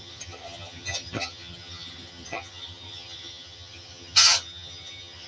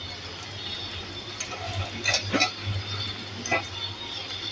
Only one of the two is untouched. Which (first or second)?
second